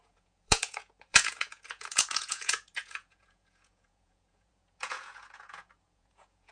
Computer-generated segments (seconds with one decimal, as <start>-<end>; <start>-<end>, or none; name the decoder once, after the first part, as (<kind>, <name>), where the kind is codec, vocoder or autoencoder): 0.0-6.5 (vocoder, Vocos)